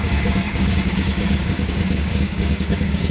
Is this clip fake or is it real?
fake